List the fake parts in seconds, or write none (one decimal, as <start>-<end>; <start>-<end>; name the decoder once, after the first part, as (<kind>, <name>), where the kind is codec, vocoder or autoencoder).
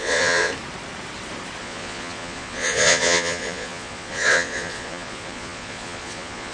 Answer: 0.0-0.5 (vocoder, Vocos); 1.6-6.5